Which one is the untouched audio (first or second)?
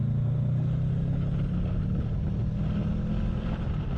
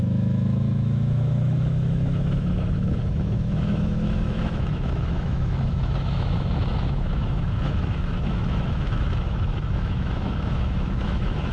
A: first